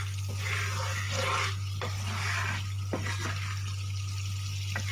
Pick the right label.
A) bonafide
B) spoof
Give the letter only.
A